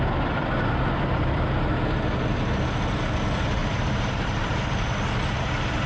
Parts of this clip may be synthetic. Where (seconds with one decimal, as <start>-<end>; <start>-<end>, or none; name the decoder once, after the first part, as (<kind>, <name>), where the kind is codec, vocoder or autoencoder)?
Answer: 3.6-4.9 (vocoder, BigVGAN v2)